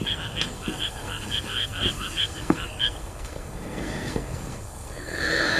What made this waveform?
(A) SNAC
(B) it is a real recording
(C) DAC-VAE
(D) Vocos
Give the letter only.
A